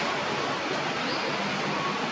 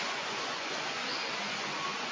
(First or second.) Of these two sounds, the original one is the first